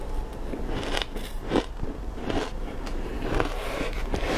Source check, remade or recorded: recorded